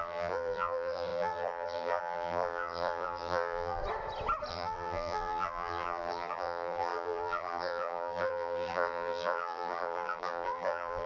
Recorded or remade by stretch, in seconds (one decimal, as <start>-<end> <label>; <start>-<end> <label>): 0.0-3.8 remade; 3.8-4.5 recorded; 4.5-11.1 remade